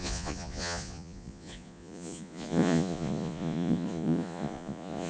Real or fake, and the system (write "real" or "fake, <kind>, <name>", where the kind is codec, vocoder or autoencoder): fake, vocoder, Vocos